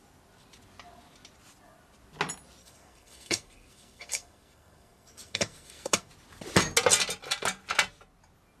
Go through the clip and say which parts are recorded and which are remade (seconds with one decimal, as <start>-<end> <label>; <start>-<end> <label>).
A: 0.0-2.6 recorded; 2.6-6.1 remade; 6.1-8.6 recorded